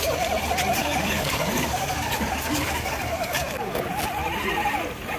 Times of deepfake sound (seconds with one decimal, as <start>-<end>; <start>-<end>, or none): 0.8-3.9